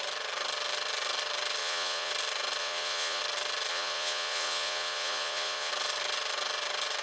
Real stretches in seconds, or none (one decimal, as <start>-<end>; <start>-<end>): 0.0-1.6; 2.1-2.6; 3.2-3.7; 5.7-7.0